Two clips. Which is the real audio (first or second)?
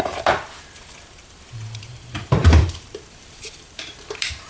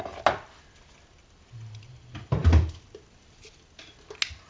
second